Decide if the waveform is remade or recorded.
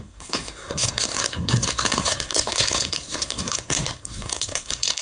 remade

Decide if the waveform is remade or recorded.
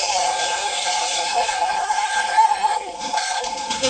remade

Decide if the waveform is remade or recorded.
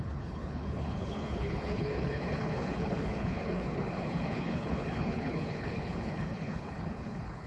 remade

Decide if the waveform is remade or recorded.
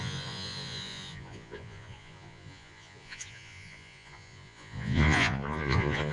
remade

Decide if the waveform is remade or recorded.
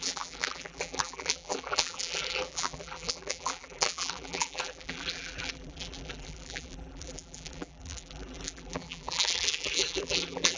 remade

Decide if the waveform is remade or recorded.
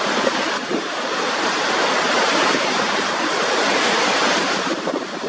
remade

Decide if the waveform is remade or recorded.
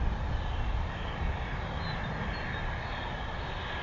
recorded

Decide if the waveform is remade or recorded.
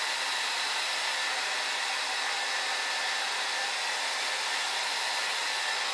recorded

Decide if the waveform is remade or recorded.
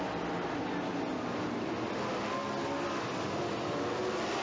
recorded